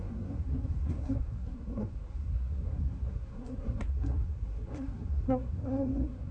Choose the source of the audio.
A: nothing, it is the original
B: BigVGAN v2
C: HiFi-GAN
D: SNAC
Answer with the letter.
D